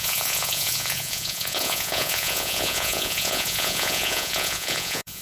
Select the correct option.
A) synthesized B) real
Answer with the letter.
A